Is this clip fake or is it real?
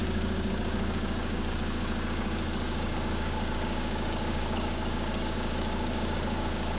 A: fake